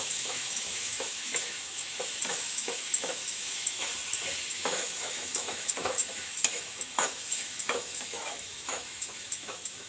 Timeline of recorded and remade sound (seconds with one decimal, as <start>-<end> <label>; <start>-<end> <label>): 0.0-3.9 remade; 3.9-4.5 recorded; 4.5-9.9 remade